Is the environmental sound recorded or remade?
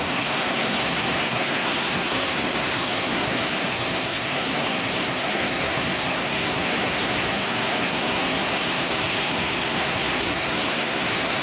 remade